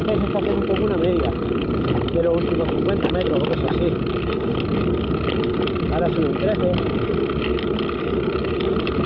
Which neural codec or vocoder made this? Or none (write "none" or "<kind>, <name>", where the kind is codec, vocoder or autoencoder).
none